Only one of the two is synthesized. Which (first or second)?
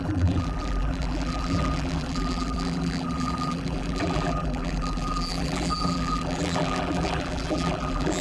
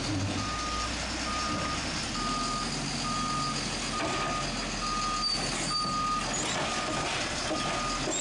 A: first